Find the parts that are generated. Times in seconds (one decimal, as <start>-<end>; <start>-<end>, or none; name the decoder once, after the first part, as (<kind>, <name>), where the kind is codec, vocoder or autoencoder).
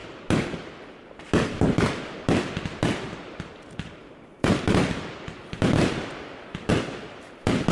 0.0-0.7 (vocoder, BigVGAN v2); 4.0-6.7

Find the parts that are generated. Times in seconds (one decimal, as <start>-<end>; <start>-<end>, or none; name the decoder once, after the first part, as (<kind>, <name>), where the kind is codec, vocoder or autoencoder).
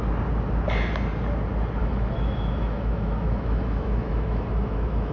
1.8-5.1 (autoencoder, DAC-VAE)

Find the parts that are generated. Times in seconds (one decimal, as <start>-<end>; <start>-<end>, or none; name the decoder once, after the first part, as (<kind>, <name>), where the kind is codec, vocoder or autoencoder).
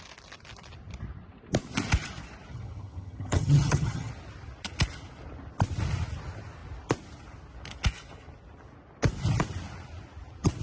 2.5-4.1 (vocoder, HiFi-GAN)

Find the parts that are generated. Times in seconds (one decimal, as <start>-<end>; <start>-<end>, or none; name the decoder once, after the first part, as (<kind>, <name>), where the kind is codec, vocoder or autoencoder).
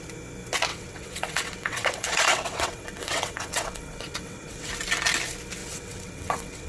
0.7-4.7 (vocoder, WaveNeXt); 5.6-6.7